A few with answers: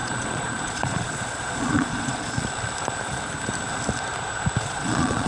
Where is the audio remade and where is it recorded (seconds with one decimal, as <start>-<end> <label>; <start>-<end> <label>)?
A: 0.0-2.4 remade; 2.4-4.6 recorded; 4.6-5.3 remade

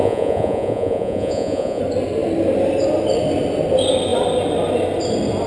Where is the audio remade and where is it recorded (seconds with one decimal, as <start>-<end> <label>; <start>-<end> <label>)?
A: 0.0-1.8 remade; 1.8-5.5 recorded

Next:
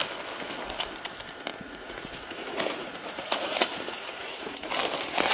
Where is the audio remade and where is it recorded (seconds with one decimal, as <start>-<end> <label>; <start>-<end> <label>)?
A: 0.0-1.5 recorded; 1.5-4.7 remade; 4.7-5.3 recorded

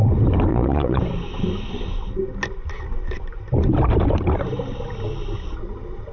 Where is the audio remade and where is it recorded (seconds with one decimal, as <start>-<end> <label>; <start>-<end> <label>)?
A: 0.0-0.5 recorded; 0.5-1.0 remade; 1.0-6.1 recorded